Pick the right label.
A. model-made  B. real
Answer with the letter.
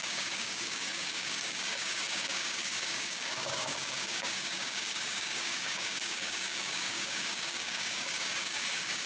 A